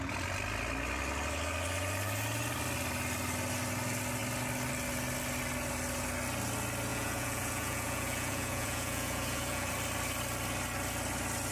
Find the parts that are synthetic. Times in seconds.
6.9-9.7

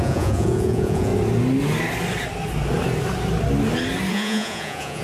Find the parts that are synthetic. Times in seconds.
0.0-1.1; 4.1-5.0

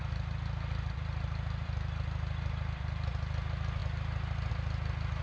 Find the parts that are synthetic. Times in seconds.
none

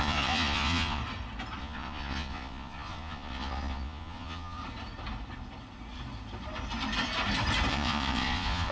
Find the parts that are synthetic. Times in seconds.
0.0-1.0; 1.6-4.6; 7.7-8.7

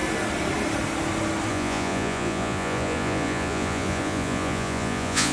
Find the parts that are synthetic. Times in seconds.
1.5-5.3